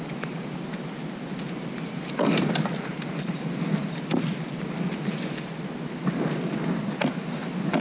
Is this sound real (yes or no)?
yes